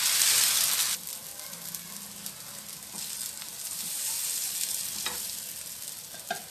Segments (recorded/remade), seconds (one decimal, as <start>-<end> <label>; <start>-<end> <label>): 0.0-6.5 recorded